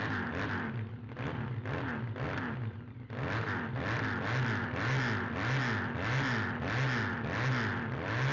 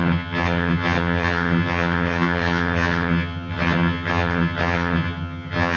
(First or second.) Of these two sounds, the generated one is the second